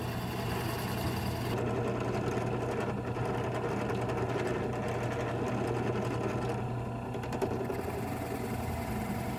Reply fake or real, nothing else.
real